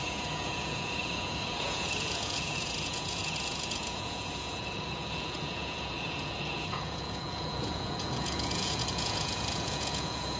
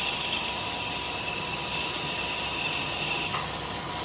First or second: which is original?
second